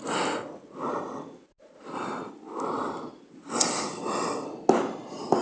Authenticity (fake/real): real